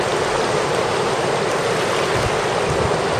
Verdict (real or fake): real